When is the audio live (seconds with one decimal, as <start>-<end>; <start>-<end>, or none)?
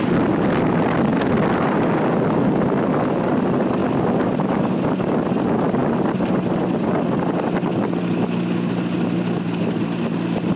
0.0-10.6